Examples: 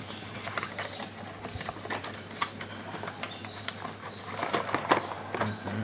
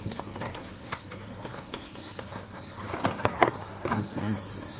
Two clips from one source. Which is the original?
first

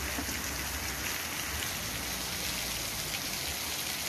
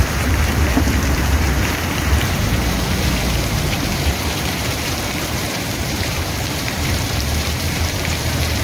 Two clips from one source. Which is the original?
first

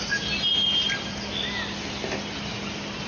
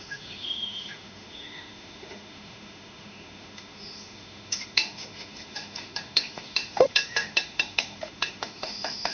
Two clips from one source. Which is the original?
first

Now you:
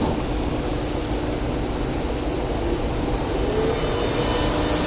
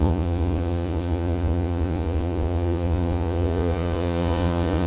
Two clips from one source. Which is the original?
first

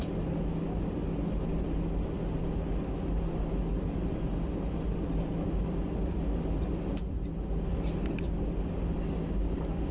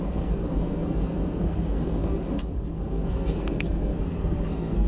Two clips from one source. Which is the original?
first